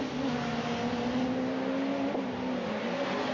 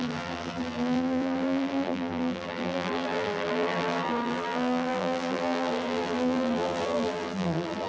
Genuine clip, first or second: first